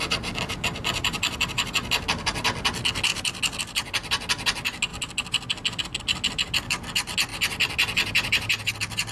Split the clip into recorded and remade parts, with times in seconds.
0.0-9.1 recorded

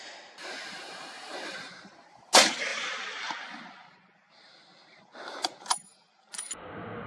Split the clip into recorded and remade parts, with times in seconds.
0.0-1.2 recorded; 1.2-2.3 remade; 2.3-2.7 recorded; 2.7-3.6 remade; 3.6-7.1 recorded

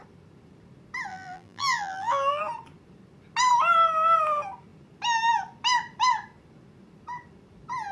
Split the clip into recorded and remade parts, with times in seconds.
0.0-1.1 recorded; 1.1-2.4 remade; 2.4-7.9 recorded

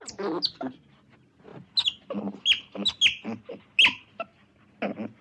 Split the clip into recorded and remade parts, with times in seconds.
0.0-5.2 recorded

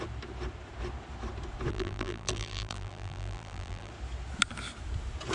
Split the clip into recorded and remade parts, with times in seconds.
0.0-1.7 recorded; 1.7-3.9 remade; 3.9-5.3 recorded